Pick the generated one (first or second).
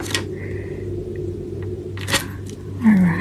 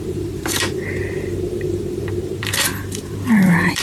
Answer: second